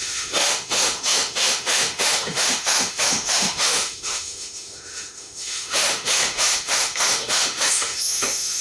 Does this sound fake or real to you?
fake